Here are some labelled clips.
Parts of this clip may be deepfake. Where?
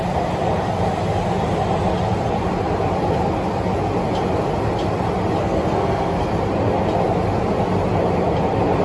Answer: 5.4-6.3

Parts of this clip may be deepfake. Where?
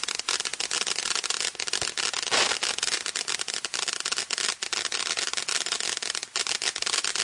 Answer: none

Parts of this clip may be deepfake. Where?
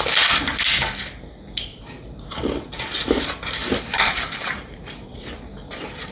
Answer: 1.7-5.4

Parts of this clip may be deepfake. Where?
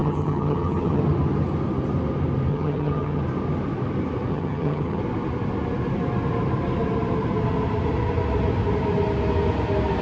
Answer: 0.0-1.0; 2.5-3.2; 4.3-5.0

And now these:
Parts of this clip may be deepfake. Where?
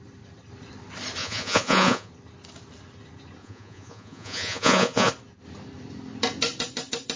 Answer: 1.2-2.1; 3.4-5.1